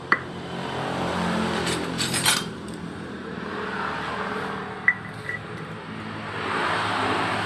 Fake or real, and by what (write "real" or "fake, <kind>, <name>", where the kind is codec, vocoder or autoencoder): fake, vocoder, BigVGAN v2